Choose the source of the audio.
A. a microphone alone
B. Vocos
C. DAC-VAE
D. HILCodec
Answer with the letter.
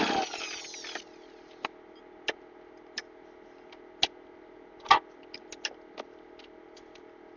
A